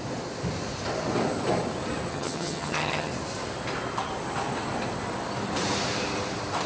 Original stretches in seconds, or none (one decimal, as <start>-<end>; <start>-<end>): 0.0-2.1; 3.1-6.7